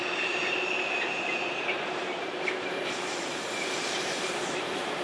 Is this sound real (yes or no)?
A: no